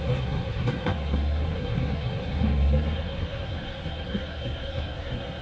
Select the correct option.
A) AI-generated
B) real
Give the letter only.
A